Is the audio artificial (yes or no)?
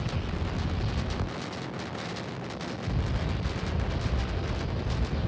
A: no